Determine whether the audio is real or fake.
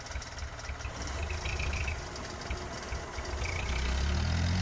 real